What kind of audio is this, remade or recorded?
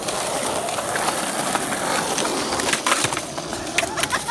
remade